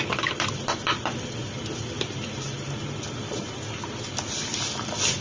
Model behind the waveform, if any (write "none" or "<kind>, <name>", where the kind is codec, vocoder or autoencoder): none